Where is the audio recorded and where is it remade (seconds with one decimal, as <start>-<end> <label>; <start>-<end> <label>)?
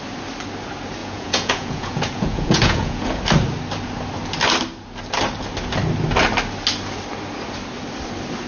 0.0-1.0 recorded; 1.0-3.2 remade; 3.2-8.5 recorded